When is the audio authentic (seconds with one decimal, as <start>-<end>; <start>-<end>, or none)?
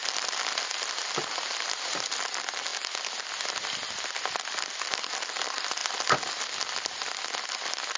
0.0-8.0